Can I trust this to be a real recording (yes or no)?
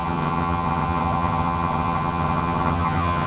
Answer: no